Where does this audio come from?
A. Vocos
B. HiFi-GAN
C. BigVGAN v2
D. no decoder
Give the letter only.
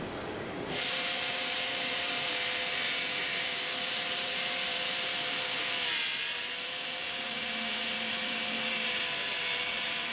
C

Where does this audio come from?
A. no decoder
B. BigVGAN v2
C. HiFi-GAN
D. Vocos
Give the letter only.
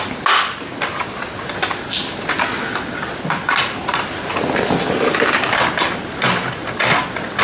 A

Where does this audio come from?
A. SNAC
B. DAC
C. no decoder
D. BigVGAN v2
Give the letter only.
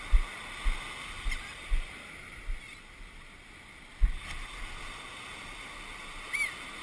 C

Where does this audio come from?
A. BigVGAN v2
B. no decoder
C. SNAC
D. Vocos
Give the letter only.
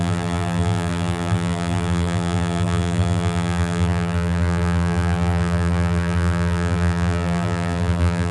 A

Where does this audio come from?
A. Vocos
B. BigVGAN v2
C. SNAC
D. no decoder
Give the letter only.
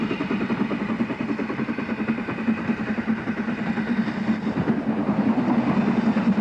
D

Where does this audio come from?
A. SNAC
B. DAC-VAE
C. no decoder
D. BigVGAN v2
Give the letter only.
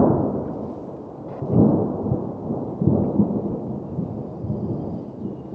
C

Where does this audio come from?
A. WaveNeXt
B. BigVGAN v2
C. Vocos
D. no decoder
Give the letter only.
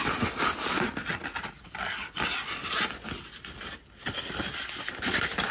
D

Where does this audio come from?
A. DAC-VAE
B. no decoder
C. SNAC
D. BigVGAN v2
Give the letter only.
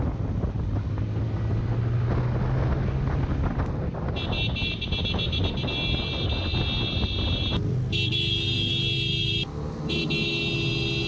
B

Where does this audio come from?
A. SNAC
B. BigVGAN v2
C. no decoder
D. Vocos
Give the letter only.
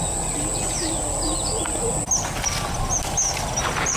C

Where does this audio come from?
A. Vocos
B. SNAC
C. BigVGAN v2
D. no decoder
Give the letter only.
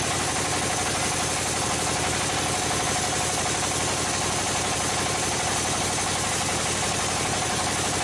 D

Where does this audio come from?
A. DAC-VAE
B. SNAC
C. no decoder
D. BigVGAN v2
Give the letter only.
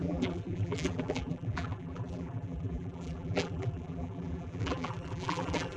D